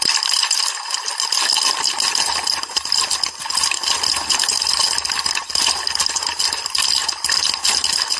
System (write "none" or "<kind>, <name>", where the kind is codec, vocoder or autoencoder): none